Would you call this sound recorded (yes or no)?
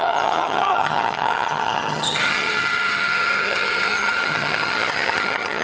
no